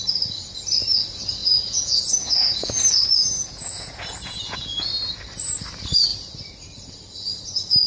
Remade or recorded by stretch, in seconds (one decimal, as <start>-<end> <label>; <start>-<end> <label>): 0.0-1.4 recorded; 1.4-2.8 remade; 2.8-3.2 recorded; 3.2-4.9 remade; 4.9-7.9 recorded